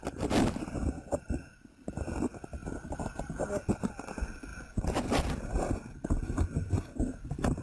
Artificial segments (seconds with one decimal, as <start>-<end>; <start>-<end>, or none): none